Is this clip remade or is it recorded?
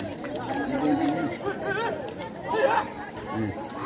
recorded